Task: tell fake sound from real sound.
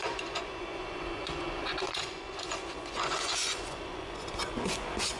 fake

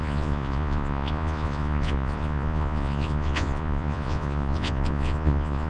fake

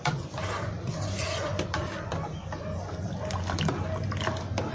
real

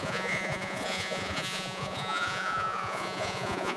fake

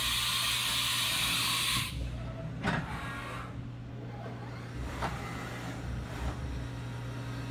real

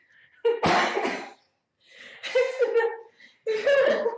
real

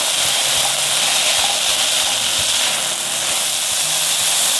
real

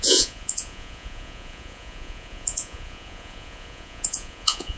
fake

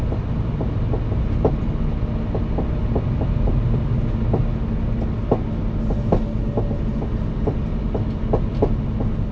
real